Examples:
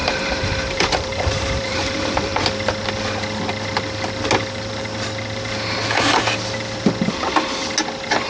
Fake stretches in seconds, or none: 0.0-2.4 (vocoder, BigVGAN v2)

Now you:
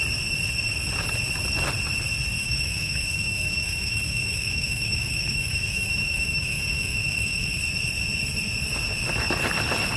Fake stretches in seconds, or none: 2.4-7.6 (autoencoder, DAC-VAE)